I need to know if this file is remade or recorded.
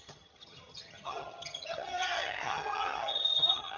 remade